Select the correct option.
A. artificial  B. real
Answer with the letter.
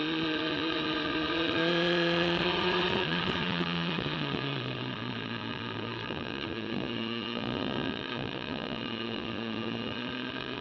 A